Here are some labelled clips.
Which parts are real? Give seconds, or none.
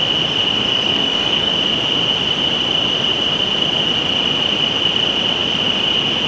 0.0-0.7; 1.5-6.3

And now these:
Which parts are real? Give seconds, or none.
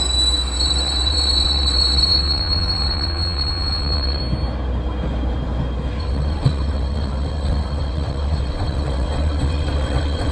0.0-0.6; 4.2-6.0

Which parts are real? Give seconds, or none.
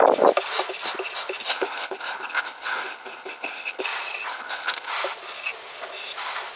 0.0-1.5; 3.8-4.3; 4.9-6.6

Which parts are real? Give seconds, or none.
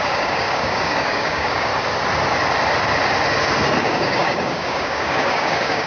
1.7-3.8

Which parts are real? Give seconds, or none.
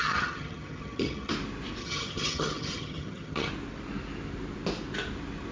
1.3-1.8; 3.5-5.5